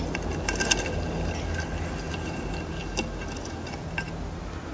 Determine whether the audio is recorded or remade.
recorded